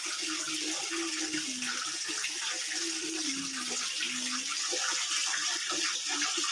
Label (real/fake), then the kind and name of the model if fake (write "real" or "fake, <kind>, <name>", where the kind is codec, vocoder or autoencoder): real